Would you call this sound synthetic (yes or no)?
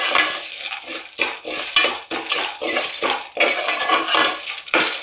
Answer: no